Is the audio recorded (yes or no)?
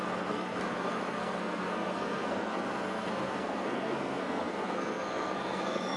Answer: no